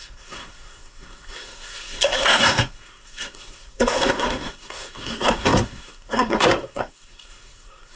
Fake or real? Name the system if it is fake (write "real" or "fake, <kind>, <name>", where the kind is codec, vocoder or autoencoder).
fake, codec, SNAC